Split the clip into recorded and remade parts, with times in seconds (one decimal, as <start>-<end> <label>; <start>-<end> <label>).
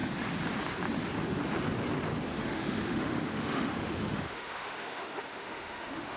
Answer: 0.0-2.3 recorded; 2.3-6.2 remade